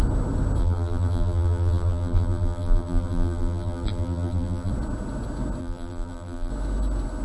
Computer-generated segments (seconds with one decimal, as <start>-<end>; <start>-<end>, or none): 0.6-4.7; 5.6-6.5